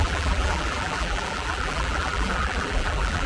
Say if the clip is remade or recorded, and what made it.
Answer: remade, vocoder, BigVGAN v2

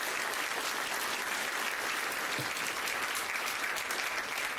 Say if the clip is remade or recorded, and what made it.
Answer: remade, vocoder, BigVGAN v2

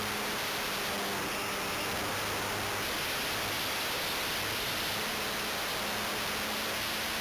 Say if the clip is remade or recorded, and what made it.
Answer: recorded